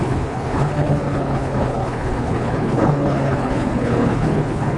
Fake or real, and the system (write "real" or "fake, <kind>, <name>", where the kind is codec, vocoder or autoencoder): fake, codec, HILCodec